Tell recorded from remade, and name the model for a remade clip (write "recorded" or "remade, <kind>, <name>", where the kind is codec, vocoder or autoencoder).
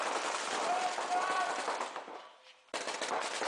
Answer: recorded